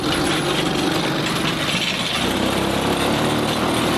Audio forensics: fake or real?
real